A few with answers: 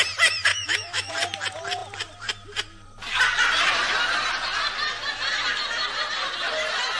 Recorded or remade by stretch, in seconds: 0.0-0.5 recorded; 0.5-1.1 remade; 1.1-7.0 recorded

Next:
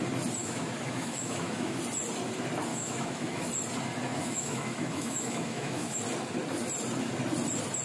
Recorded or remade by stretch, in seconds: 0.0-0.4 recorded; 0.4-1.8 remade; 1.8-2.7 recorded; 2.7-3.5 remade; 3.5-4.1 recorded; 4.1-6.0 remade; 6.0-7.8 recorded

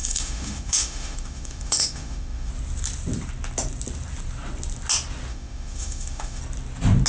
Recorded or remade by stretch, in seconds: 0.0-2.5 remade; 2.5-5.3 recorded; 5.3-6.4 remade; 6.4-7.1 recorded